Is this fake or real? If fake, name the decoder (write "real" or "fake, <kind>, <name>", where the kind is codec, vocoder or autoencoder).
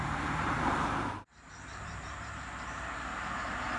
fake, vocoder, BigVGAN v2